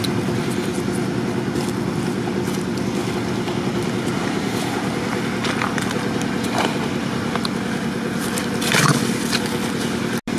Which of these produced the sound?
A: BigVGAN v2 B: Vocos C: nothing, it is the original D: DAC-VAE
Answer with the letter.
C